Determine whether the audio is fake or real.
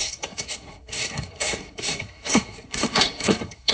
fake